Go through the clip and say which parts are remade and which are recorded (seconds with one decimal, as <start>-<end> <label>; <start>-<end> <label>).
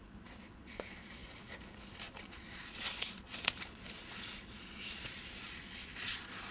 0.0-6.5 remade